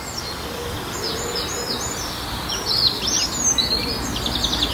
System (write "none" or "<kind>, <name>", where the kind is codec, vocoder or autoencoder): none